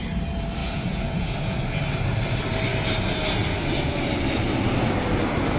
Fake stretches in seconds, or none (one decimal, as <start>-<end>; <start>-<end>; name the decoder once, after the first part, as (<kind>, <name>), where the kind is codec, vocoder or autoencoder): 0.6-1.8 (vocoder, Vocos)